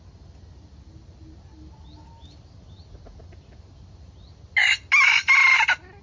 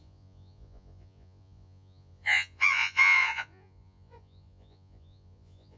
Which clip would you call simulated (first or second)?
second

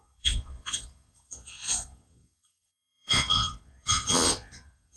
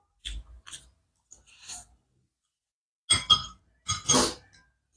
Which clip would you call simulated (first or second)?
first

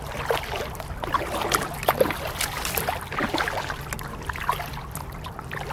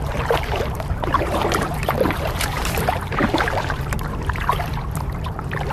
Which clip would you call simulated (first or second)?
second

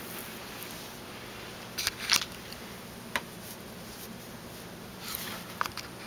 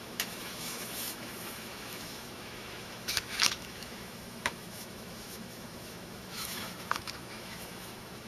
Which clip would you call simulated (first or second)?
second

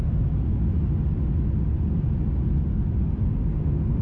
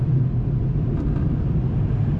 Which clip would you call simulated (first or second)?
second